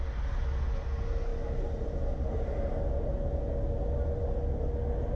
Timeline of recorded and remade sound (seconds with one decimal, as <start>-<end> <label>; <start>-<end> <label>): 0.0-5.2 recorded